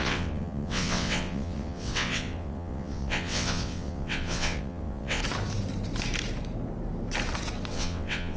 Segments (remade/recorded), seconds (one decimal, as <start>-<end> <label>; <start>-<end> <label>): 0.0-5.2 remade; 5.2-7.7 recorded; 7.7-8.4 remade